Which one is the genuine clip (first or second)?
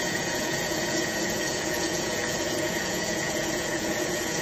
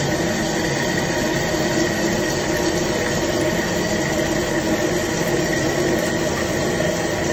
second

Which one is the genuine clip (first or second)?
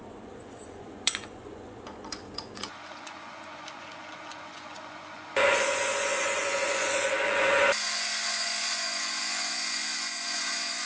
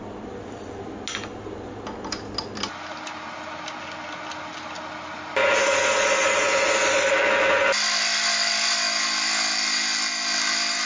second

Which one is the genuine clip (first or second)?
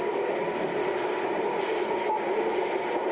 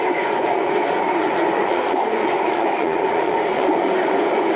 first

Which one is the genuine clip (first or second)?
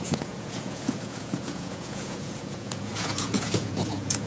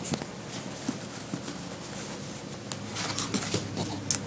second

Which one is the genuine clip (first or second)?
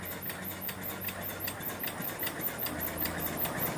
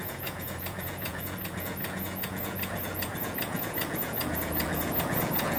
first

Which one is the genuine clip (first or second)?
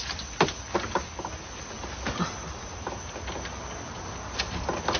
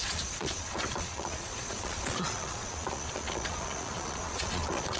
first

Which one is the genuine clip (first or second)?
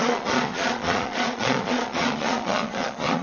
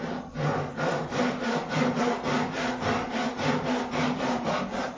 second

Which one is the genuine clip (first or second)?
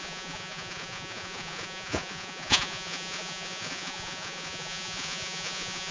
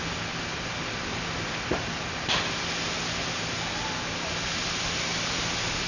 second